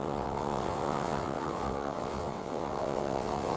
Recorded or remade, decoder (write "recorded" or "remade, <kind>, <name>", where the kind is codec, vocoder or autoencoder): remade, vocoder, WaveNeXt